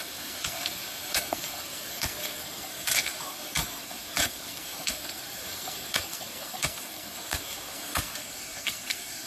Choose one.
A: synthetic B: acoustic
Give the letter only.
A